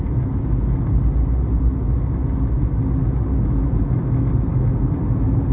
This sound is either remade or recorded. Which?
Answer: recorded